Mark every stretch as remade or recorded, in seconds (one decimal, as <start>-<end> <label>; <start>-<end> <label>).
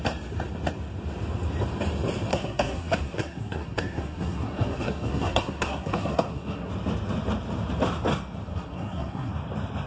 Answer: 0.0-2.3 recorded; 2.3-6.7 remade; 6.7-8.5 recorded; 8.5-9.3 remade; 9.3-9.9 recorded